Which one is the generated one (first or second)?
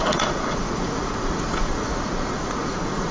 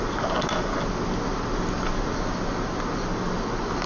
first